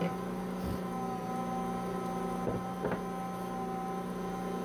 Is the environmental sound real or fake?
real